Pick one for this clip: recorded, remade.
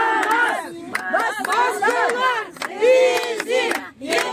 recorded